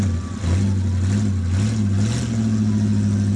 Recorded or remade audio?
recorded